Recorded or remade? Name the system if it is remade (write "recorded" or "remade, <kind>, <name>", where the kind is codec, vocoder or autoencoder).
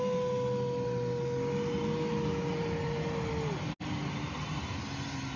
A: recorded